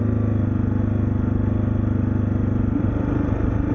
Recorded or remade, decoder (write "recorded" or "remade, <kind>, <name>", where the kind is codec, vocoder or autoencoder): recorded